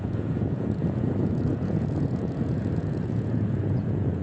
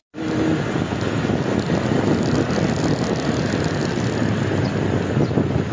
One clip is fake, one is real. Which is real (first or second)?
second